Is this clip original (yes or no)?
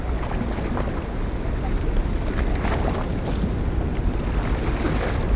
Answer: yes